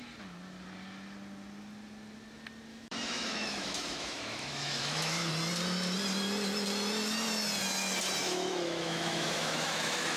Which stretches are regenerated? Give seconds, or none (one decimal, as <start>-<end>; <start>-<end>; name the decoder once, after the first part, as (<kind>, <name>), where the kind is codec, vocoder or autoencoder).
2.7-5.3 (autoencoder, DAC-VAE); 8.2-10.2